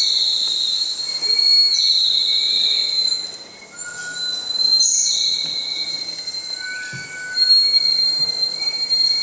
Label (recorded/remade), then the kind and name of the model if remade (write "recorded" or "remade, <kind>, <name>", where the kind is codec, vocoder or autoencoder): recorded